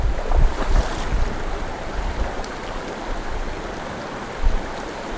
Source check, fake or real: fake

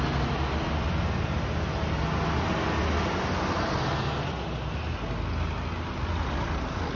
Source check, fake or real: real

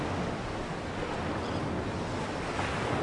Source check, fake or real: real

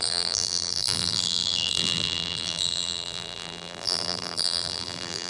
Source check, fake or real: fake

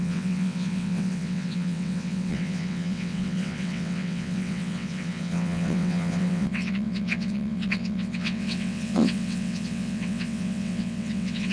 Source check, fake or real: fake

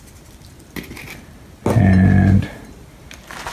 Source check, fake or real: real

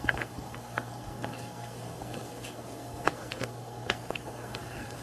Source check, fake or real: fake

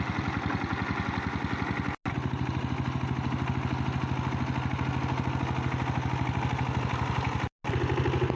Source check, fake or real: real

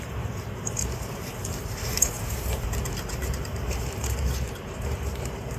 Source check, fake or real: fake